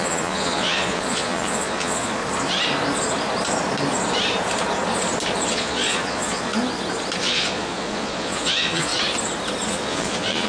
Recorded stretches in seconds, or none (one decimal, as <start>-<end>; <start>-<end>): 2.2-5.5; 6.5-7.2; 8.9-9.7